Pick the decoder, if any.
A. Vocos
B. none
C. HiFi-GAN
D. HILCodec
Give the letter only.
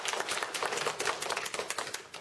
B